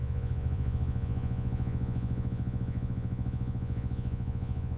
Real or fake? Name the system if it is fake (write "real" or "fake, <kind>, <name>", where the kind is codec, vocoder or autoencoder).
fake, vocoder, Vocos